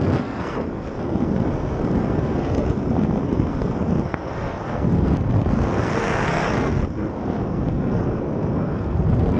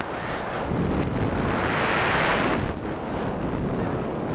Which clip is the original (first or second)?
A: second